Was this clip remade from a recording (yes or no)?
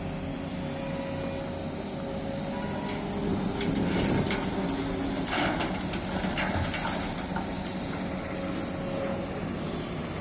no